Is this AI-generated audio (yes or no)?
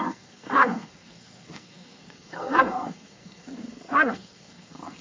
yes